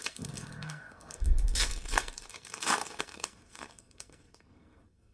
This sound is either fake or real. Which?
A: fake